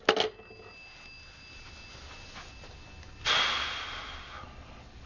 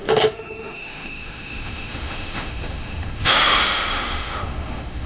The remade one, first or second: second